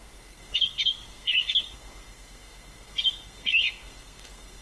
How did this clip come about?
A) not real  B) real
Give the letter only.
A